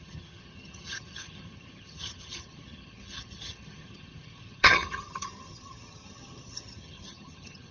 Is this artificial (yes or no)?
yes